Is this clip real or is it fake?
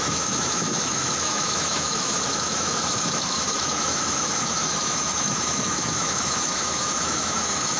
fake